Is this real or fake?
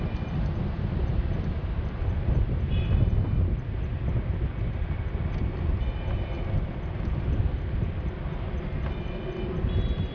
real